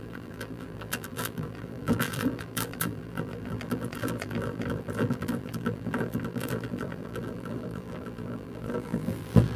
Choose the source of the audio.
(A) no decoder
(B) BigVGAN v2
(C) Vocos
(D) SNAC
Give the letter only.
B